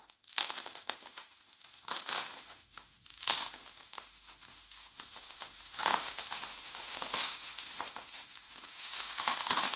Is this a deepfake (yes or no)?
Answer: yes